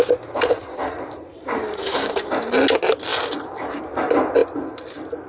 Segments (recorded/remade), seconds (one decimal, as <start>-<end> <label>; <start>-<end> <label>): 0.0-0.6 recorded; 0.6-2.3 remade; 2.3-3.1 recorded; 3.1-3.8 remade; 3.8-5.3 recorded